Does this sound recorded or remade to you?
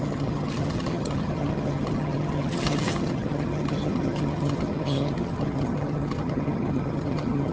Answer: remade